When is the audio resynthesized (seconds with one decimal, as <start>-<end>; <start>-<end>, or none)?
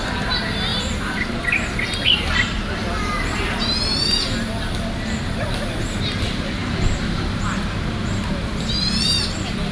none